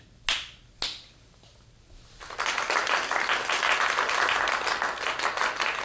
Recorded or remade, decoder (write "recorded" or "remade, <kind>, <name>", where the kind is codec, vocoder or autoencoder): recorded